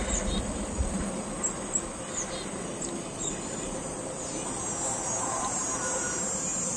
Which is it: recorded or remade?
recorded